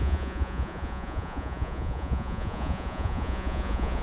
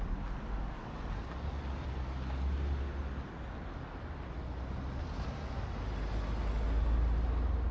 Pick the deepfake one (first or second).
first